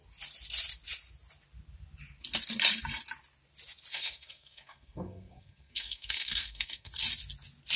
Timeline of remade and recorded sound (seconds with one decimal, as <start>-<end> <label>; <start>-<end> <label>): 0.0-3.9 recorded; 3.9-6.9 remade; 6.9-7.8 recorded